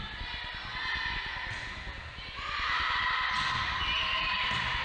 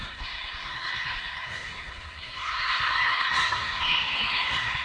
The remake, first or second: second